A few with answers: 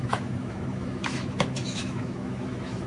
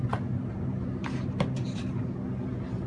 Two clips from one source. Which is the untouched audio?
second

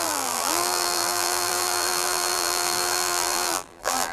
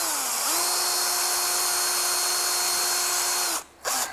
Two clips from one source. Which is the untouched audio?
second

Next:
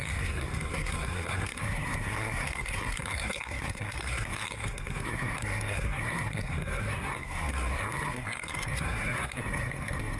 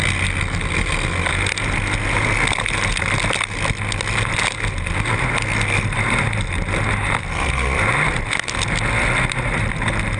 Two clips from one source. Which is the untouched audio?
second